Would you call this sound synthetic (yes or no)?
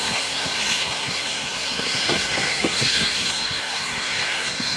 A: yes